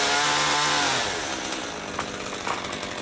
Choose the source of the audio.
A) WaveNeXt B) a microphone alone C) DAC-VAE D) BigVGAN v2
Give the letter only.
B